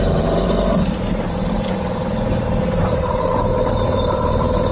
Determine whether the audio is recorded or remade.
remade